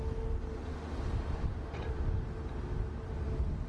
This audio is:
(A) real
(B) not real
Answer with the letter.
A